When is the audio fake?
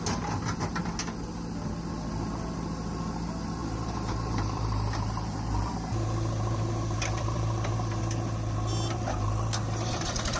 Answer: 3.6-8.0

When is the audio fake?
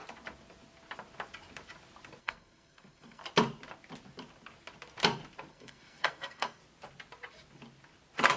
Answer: 2.2-3.2; 5.5-6.6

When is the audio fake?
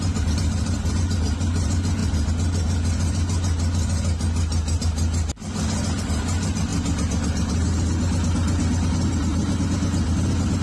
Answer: none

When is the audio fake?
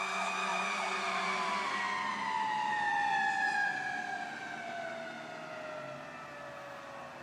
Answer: 0.5-1.5; 2.1-4.9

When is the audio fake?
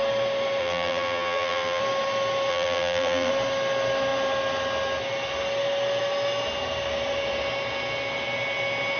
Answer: 0.6-1.8; 2.5-3.3